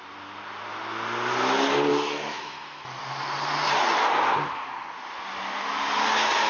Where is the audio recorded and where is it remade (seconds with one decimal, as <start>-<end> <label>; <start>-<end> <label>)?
0.0-1.9 recorded; 1.9-3.0 remade; 3.0-6.5 recorded